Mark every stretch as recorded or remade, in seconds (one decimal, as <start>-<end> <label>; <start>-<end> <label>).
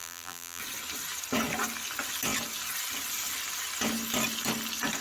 0.0-0.6 remade; 0.6-5.0 recorded